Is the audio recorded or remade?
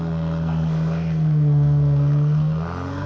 remade